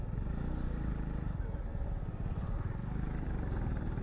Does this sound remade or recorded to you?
recorded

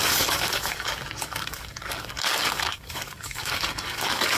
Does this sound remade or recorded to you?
remade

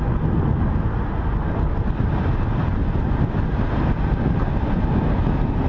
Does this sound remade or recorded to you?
recorded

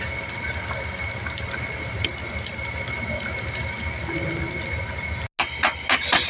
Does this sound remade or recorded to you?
recorded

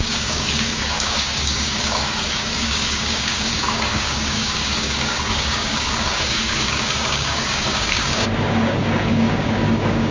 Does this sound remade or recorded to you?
remade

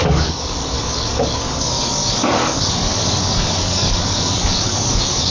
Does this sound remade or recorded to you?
remade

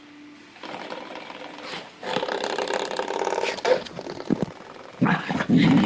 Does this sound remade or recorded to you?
recorded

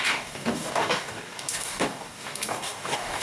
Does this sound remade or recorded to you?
remade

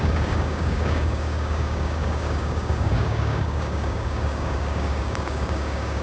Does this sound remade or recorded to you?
remade